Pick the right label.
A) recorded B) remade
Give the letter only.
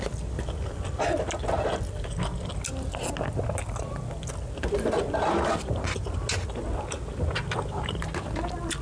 A